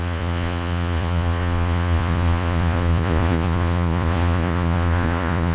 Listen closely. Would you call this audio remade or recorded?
remade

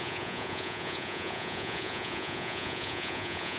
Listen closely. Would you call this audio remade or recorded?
remade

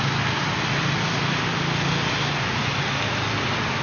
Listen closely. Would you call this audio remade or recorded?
recorded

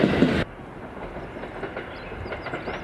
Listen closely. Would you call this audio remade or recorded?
recorded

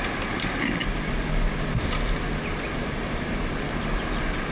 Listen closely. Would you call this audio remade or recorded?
recorded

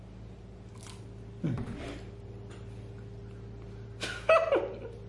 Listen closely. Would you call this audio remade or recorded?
recorded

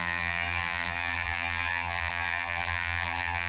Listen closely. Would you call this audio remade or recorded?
remade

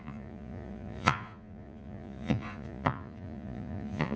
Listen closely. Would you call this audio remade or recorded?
remade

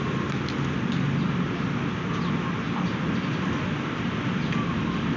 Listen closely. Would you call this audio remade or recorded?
recorded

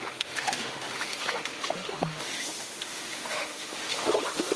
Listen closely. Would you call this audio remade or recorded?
remade